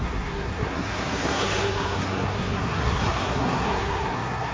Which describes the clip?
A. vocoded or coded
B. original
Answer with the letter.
A